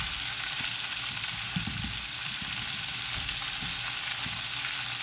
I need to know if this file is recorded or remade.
recorded